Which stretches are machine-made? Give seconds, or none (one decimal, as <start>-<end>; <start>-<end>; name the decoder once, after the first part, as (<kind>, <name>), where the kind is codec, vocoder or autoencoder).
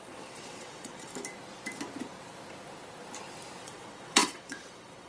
0.0-1.1 (vocoder, WaveNeXt); 3.6-5.1